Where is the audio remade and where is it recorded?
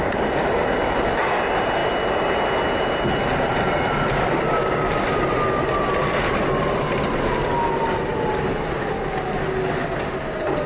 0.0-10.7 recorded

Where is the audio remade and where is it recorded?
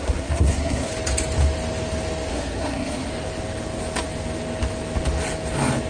0.0-0.9 remade; 0.9-2.3 recorded; 2.3-3.1 remade; 3.1-5.9 recorded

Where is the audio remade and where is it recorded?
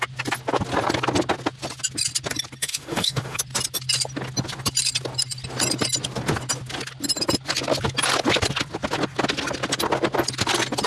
0.0-2.6 recorded; 2.6-3.4 remade; 3.4-10.9 recorded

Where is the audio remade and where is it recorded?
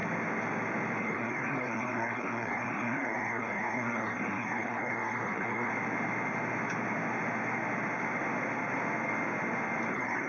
0.0-1.0 recorded; 1.0-5.7 remade; 5.7-9.9 recorded; 9.9-10.3 remade